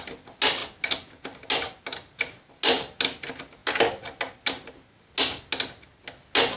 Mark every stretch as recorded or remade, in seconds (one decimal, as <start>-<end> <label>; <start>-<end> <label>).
0.0-6.6 recorded